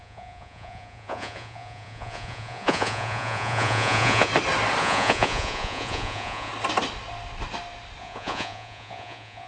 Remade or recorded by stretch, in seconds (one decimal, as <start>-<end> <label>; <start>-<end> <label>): 0.0-4.3 remade; 4.3-4.8 recorded; 4.8-6.5 remade; 6.5-8.0 recorded; 8.0-9.5 remade